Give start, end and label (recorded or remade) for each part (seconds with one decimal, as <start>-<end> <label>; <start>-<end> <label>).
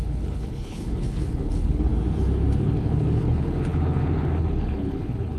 0.0-1.9 remade; 1.9-2.6 recorded; 2.6-5.4 remade